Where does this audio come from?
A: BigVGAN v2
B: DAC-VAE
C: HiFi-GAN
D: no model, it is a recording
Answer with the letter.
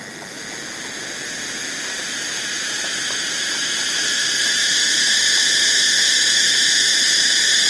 D